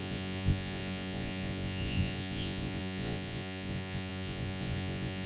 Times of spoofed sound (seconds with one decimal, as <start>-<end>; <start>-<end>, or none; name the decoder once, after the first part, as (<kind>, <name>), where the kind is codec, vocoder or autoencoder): 0.0-5.3 (vocoder, Vocos)